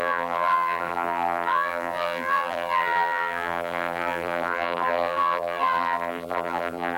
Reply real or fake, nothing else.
fake